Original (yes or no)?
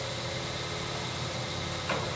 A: yes